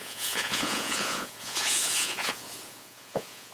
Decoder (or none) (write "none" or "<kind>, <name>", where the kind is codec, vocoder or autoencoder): vocoder, Vocos